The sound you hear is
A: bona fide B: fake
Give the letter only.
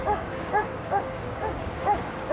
B